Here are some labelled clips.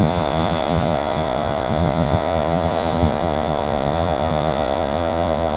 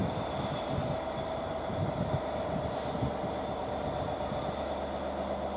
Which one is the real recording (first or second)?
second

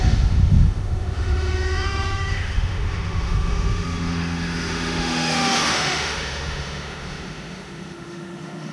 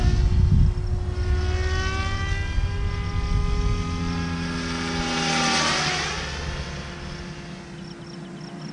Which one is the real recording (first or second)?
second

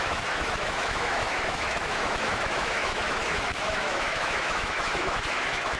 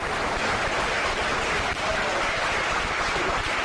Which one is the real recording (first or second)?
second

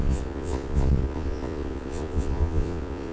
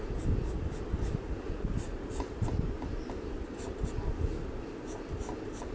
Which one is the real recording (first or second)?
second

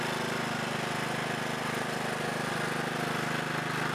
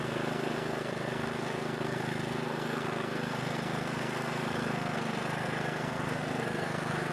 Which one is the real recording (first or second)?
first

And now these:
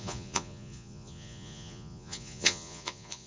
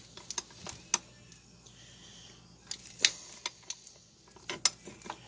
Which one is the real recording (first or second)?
second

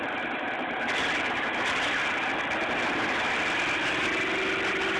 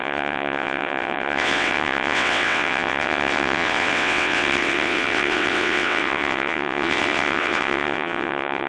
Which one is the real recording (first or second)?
first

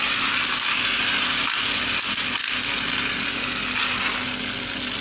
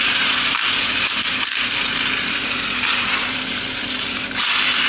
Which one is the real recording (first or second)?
first